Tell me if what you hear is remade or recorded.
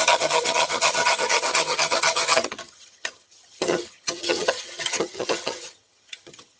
remade